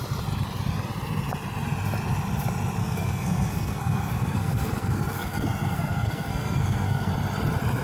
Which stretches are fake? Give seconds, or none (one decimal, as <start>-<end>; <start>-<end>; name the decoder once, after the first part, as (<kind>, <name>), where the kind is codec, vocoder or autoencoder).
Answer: 2.8-7.1 (codec, SNAC)